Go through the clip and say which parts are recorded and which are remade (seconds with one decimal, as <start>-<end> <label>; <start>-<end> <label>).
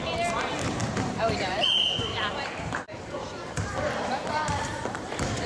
0.0-5.5 remade